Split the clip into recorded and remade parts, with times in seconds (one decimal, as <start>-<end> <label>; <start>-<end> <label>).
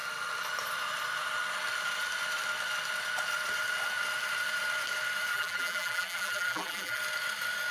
0.0-5.3 recorded; 5.3-7.0 remade; 7.0-7.7 recorded